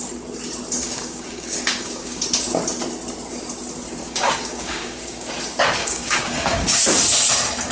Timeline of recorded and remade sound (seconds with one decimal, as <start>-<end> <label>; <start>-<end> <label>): 0.0-0.8 recorded; 0.8-2.2 remade; 2.2-4.0 recorded; 4.0-5.3 remade; 5.3-5.8 recorded; 5.8-6.8 remade; 6.8-7.7 recorded